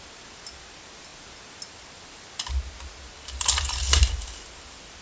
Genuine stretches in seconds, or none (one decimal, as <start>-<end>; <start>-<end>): 0.0-5.0